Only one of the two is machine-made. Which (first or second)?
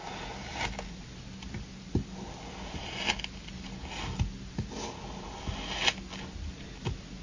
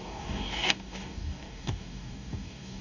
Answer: second